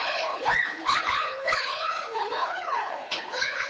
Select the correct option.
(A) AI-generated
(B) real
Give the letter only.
A